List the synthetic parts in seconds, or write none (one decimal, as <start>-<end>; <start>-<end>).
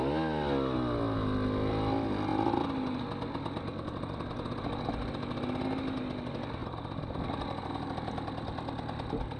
none